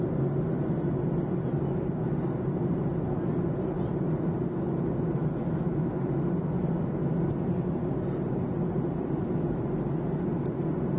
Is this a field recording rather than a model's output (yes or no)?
yes